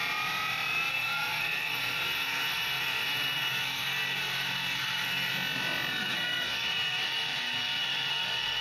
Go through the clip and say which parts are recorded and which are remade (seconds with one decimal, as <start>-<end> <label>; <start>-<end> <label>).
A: 0.0-0.9 recorded; 0.9-5.3 remade; 5.3-5.9 recorded; 5.9-8.6 remade

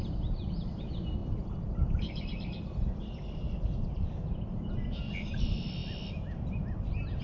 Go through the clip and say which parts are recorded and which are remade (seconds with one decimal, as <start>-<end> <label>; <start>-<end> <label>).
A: 0.0-1.2 recorded; 1.2-5.0 remade; 5.0-7.2 recorded